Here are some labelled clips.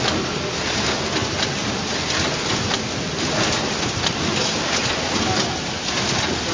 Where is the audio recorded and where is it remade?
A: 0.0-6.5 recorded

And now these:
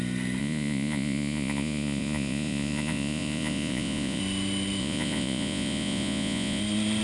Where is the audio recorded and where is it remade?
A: 0.0-0.4 recorded; 0.4-4.2 remade; 4.2-4.8 recorded; 4.8-6.6 remade; 6.6-7.0 recorded

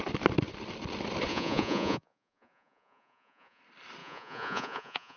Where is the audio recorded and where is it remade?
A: 0.0-1.3 recorded; 1.3-3.6 remade; 3.6-4.0 recorded; 4.0-5.2 remade

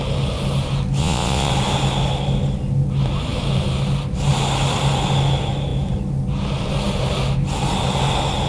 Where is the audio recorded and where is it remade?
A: 0.0-1.0 recorded; 1.0-1.5 remade; 1.5-8.5 recorded

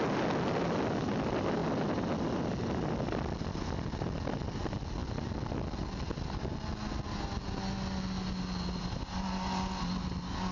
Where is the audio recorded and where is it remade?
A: 0.0-10.5 recorded

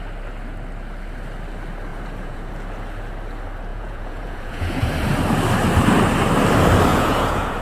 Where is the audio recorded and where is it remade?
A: 0.0-1.9 recorded; 1.9-2.5 remade; 2.5-3.7 recorded; 3.7-4.9 remade; 4.9-6.9 recorded; 6.9-7.6 remade